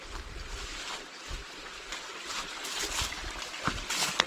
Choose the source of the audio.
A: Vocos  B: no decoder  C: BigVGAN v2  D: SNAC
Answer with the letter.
B